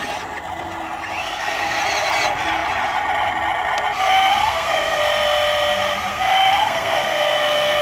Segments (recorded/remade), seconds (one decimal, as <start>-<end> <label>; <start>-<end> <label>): 0.0-1.2 recorded; 1.2-1.8 remade; 1.8-4.4 recorded; 4.4-5.0 remade; 5.0-6.1 recorded; 6.1-7.8 remade